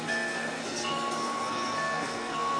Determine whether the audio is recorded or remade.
remade